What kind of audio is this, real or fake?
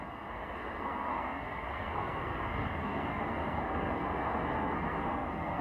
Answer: fake